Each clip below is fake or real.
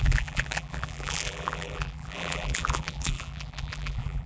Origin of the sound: fake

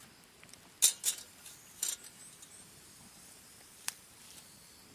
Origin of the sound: real